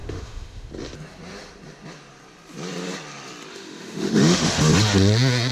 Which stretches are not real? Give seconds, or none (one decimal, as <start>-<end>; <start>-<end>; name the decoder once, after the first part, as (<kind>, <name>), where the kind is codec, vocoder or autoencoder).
0.0-0.7 (autoencoder, DAC-VAE); 3.5-4.6